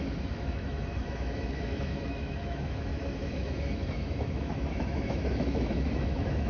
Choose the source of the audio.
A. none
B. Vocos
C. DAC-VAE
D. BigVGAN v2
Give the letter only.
C